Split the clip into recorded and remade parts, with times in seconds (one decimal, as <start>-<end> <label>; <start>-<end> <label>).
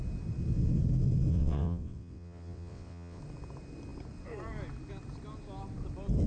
0.0-1.3 recorded; 1.3-3.2 remade; 3.2-6.3 recorded